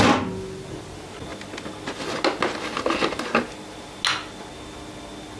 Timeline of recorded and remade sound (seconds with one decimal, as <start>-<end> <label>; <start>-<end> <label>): 0.0-5.4 recorded